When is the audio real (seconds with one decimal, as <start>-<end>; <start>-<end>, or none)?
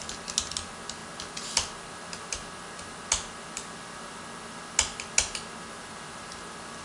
0.0-6.8